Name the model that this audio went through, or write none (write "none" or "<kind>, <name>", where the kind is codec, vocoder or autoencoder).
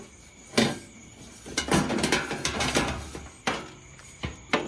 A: none